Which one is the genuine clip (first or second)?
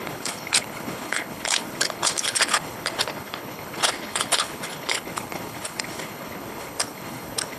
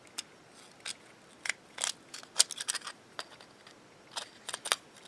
second